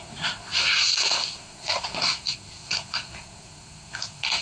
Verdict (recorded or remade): remade